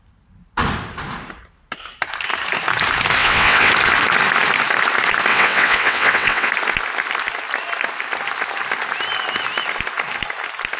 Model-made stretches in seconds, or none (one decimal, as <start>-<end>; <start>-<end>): 3.2-3.7; 5.3-6.5